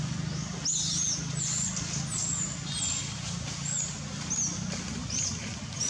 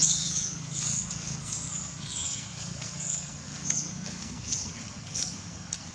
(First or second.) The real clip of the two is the first